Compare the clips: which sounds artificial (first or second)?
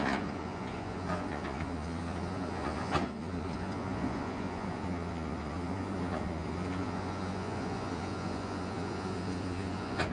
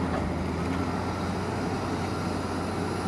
first